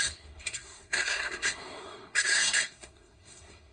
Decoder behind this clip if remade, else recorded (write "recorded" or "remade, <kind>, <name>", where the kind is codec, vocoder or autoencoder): remade, codec, SNAC